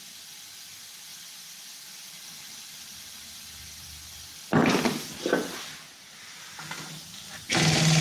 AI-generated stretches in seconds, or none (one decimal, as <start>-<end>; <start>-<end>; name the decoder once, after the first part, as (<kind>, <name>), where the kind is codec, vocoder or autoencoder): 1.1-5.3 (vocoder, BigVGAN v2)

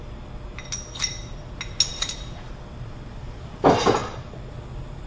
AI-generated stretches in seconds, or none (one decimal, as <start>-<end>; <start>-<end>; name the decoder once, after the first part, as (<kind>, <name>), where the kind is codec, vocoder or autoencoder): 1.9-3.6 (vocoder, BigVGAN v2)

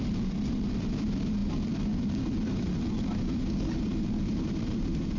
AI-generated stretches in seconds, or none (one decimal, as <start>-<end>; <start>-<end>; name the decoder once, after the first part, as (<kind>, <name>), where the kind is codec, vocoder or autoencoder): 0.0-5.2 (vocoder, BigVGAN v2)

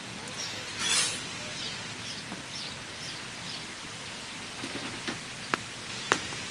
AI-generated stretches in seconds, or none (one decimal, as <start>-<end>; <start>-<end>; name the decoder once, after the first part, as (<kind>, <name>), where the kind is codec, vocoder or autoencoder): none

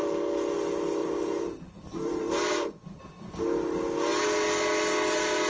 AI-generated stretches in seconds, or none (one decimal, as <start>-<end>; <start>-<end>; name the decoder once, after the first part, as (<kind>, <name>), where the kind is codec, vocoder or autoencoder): 1.0-3.3 (vocoder, BigVGAN v2)

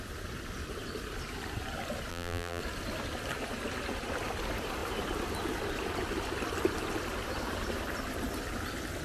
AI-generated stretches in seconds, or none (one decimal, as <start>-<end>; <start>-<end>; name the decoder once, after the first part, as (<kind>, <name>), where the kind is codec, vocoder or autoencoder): 2.1-2.6 (vocoder, BigVGAN v2)